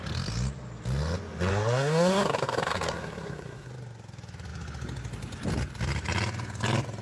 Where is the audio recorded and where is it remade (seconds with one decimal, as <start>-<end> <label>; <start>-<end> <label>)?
0.0-1.5 recorded; 1.5-3.7 remade; 3.7-7.0 recorded